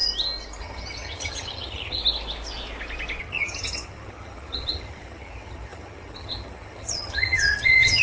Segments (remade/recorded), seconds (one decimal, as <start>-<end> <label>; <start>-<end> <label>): 0.0-0.6 recorded; 0.6-2.0 remade; 2.0-3.2 recorded; 3.2-8.0 remade